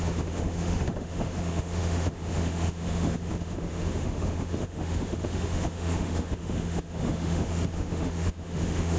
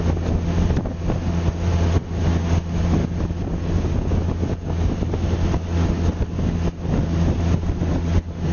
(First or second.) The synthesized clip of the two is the first